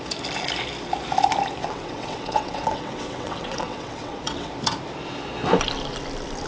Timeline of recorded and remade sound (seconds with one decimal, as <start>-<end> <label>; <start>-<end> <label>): 0.0-1.6 recorded; 1.6-4.5 remade; 4.5-6.5 recorded